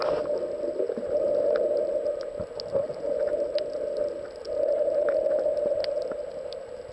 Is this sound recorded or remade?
recorded